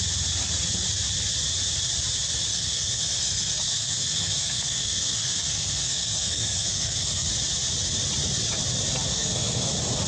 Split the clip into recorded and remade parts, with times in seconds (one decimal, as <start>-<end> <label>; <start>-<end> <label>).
0.0-2.5 recorded; 2.5-7.3 remade; 7.3-9.1 recorded; 9.1-9.7 remade; 9.7-10.1 recorded